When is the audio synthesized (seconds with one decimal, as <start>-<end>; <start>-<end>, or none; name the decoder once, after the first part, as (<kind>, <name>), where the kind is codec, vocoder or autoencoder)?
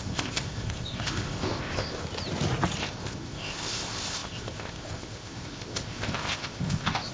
0.0-2.0 (codec, ZipCodec); 2.8-7.1